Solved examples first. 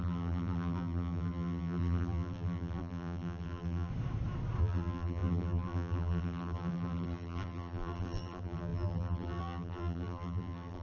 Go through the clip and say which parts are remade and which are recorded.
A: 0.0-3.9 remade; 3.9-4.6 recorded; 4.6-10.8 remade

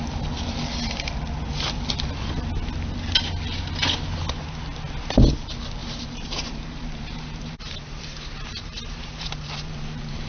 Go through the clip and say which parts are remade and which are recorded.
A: 0.0-5.8 recorded; 5.8-10.3 remade

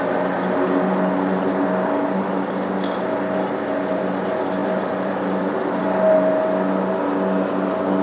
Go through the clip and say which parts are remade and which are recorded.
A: 0.0-4.6 recorded; 4.6-5.8 remade; 5.8-8.0 recorded

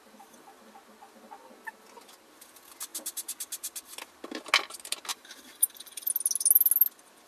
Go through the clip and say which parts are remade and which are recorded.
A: 0.0-5.1 recorded; 5.1-6.1 remade; 6.1-7.3 recorded

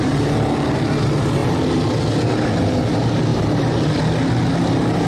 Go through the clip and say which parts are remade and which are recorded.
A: 0.0-3.3 recorded; 3.3-4.0 remade; 4.0-5.1 recorded

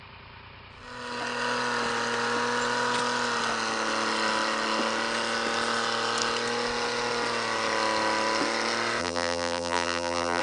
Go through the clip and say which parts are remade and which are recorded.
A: 0.0-9.0 recorded; 9.0-10.4 remade

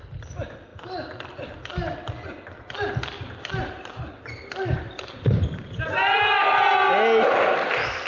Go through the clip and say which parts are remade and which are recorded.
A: 0.0-8.1 recorded

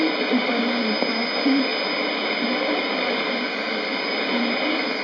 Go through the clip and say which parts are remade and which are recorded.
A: 0.0-5.0 recorded